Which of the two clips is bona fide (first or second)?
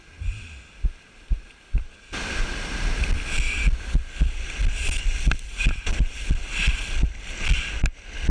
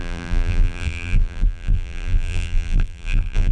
first